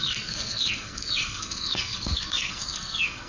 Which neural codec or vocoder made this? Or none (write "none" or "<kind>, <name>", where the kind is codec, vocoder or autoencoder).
codec, SNAC